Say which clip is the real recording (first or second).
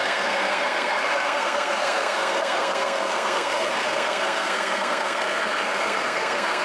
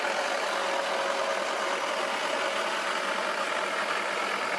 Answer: second